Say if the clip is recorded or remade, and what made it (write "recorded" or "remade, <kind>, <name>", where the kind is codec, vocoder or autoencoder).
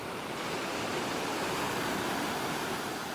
remade, vocoder, BigVGAN v2